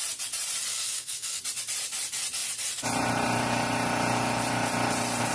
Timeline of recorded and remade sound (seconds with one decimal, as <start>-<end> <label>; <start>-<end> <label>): 0.0-0.7 recorded; 0.7-1.4 remade; 1.4-5.3 recorded